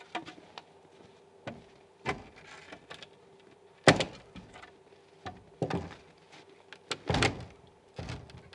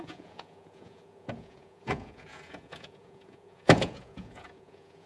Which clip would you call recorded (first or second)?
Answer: first